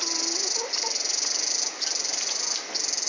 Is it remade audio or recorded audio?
recorded